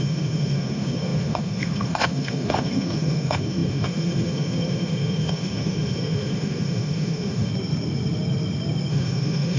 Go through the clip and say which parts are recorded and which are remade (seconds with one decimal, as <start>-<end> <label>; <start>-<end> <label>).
0.0-7.5 remade; 7.5-8.9 recorded; 8.9-9.6 remade